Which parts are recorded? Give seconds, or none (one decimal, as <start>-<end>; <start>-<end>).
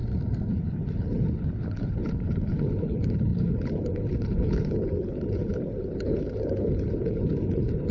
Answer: 0.0-0.5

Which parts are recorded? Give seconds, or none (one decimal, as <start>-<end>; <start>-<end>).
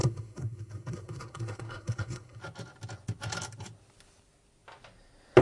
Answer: 2.4-5.4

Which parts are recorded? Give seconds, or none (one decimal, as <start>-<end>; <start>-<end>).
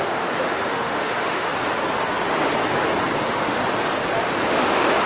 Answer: 1.5-3.2; 3.6-4.5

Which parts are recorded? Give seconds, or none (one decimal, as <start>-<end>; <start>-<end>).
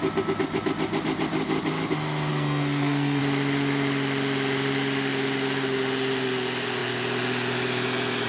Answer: 0.0-2.3; 3.2-8.3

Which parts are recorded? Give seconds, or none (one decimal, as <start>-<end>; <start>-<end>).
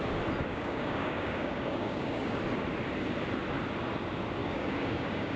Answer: 0.0-0.5; 2.4-4.4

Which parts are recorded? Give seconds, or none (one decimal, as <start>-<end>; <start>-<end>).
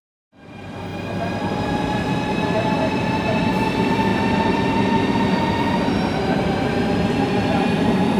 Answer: 0.9-1.5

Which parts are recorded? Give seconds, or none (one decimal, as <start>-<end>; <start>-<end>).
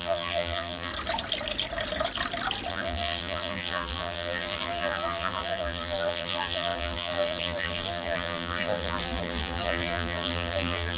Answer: 0.9-2.7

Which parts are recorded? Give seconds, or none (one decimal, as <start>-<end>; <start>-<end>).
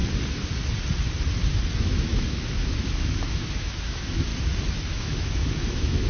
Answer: 0.0-1.8; 4.3-4.9